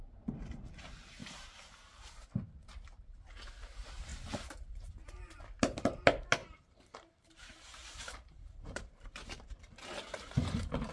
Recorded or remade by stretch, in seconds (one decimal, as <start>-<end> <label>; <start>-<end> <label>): 0.0-1.2 recorded; 1.2-2.1 remade; 2.1-4.1 recorded; 4.1-4.9 remade; 4.9-6.4 recorded; 6.4-10.9 remade